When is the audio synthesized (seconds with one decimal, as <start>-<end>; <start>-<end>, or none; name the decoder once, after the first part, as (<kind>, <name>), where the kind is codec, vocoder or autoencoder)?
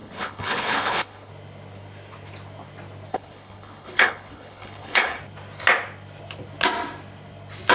0.0-1.3 (codec, HILCodec); 3.1-5.2